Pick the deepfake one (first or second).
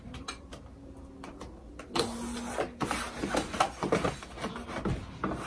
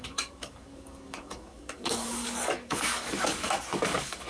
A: second